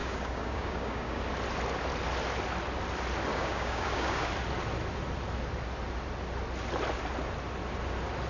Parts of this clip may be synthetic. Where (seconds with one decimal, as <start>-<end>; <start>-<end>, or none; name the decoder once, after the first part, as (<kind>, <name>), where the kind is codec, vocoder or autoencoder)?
0.0-1.2 (codec, DAC); 3.3-4.3